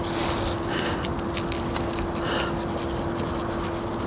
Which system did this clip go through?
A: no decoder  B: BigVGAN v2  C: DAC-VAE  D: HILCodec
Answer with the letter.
A